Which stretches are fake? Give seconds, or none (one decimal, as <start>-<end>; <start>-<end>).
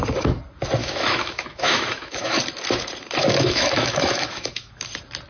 0.8-2.4; 3.2-4.7